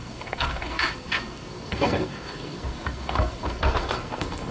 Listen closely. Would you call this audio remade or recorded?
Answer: remade